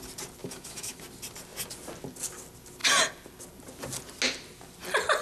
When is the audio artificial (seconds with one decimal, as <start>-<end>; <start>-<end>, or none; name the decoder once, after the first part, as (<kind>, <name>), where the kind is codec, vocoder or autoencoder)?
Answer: 0.4-1.0 (autoencoder, DAC-VAE)